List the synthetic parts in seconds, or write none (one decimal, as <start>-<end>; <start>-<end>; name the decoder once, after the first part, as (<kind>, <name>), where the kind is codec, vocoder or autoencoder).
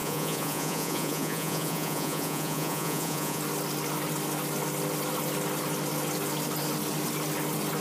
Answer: 0.0-3.4 (vocoder, Vocos)